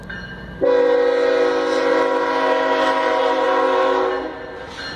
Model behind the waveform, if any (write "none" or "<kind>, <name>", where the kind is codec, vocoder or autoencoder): none